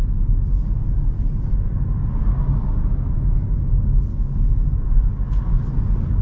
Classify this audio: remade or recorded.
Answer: recorded